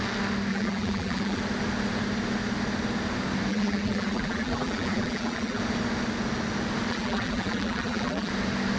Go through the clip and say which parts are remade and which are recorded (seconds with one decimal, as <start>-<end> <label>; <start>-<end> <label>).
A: 0.0-0.5 recorded; 0.5-1.4 remade; 1.4-3.5 recorded; 3.5-5.6 remade; 5.6-6.9 recorded; 6.9-8.3 remade; 8.3-8.8 recorded